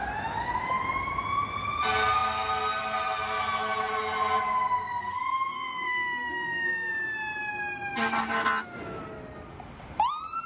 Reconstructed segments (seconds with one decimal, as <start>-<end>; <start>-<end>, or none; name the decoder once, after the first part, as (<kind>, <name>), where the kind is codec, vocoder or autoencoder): 5.0-6.9 (codec, SNAC)